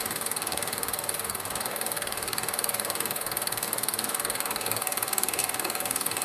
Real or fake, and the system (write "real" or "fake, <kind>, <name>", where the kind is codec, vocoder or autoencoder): fake, codec, DAC